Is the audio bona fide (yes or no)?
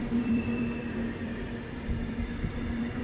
no